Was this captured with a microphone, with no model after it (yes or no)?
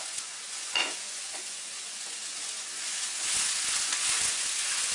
no